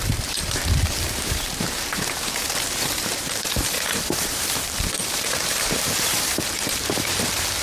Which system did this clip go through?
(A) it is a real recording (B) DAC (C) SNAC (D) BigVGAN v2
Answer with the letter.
D